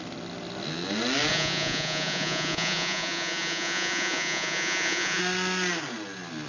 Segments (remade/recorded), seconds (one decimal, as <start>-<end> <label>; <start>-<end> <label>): 0.0-1.3 recorded; 1.3-5.2 remade; 5.2-6.5 recorded